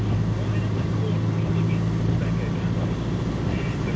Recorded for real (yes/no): yes